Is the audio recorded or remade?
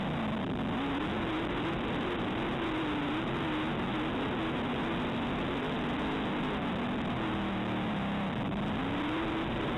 recorded